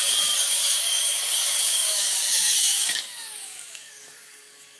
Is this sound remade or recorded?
remade